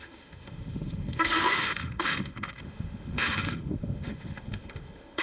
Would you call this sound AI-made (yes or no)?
yes